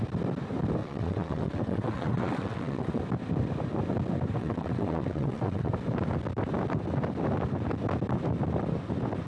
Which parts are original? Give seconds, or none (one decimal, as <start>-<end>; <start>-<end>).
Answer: 0.0-0.8; 3.0-4.4; 5.7-9.3